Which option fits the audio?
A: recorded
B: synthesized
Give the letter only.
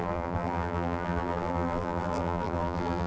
B